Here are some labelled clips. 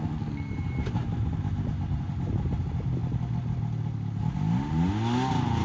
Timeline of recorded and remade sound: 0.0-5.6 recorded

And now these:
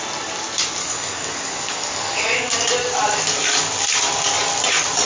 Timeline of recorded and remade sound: 0.0-0.8 recorded; 0.8-2.5 remade; 2.5-5.1 recorded

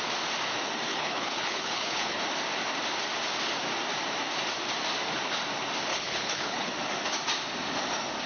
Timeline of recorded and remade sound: 0.0-0.9 recorded; 0.9-2.2 remade; 2.2-5.9 recorded; 5.9-6.7 remade; 6.7-8.3 recorded

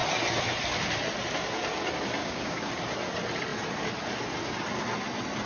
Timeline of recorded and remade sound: 0.0-2.2 recorded; 2.2-2.7 remade; 2.7-5.5 recorded

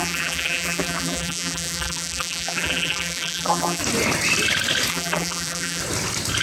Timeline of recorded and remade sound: 0.0-3.8 remade; 3.8-4.9 recorded; 4.9-5.8 remade; 5.8-6.4 recorded

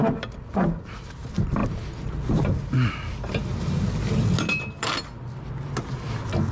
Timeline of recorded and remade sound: 0.0-6.5 recorded

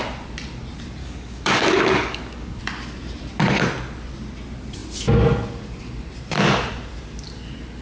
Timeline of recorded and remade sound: 0.0-1.0 recorded; 1.0-2.6 remade; 2.6-7.8 recorded